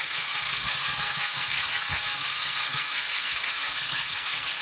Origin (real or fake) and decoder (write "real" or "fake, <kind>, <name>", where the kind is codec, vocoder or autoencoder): fake, codec, SNAC